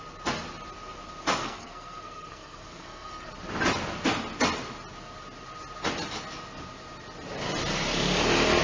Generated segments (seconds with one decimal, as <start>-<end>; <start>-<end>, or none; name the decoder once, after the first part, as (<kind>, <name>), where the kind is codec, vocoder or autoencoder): 1.4-3.3 (codec, SNAC)